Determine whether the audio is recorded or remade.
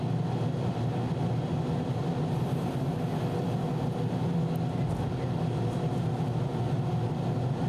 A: recorded